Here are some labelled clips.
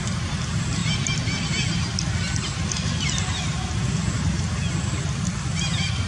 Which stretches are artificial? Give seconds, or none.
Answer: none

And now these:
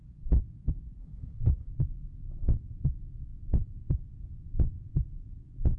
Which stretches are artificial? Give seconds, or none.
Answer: 1.0-1.7 (codec, SNAC)

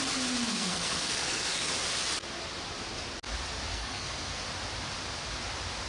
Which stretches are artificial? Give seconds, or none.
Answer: 0.5-1.7 (codec, SNAC); 3.7-4.4